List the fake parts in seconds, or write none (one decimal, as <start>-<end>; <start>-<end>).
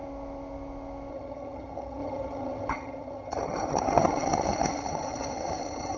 1.1-6.0